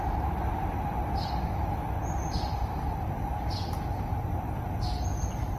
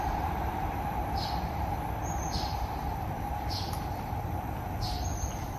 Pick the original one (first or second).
first